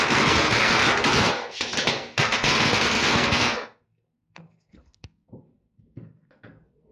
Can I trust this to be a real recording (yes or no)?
no